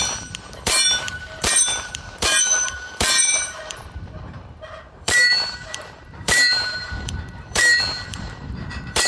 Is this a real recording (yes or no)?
no